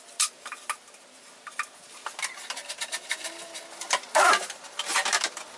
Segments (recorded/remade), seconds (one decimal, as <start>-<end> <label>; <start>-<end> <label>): 0.0-5.6 recorded